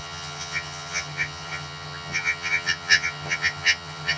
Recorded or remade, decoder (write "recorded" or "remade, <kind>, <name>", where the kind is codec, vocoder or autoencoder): remade, vocoder, HiFi-GAN